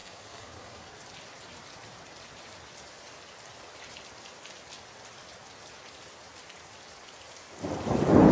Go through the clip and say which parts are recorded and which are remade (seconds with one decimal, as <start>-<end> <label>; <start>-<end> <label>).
0.0-1.0 remade; 1.0-8.3 recorded